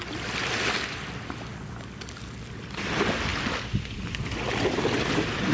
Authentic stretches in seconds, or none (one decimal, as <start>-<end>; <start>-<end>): 0.0-5.5

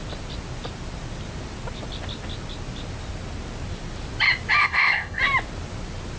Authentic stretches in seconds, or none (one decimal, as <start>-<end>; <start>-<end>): 0.0-4.6; 5.2-6.2

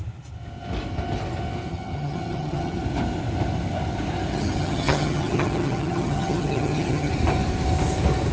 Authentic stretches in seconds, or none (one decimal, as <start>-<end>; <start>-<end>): 0.0-1.7; 2.8-4.3; 7.1-8.3

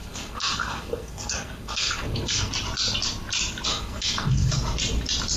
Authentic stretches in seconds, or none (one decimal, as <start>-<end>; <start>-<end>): 2.5-3.7; 4.5-5.4

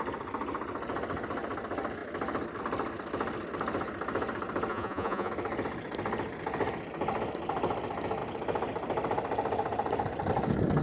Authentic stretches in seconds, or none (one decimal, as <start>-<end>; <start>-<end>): 0.0-4.7; 5.3-10.8

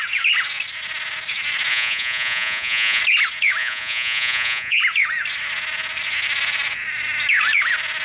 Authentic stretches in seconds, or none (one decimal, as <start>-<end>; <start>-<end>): 0.0-1.7; 3.0-3.6; 4.8-8.0